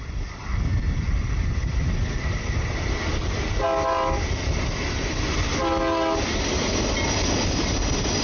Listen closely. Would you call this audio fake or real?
real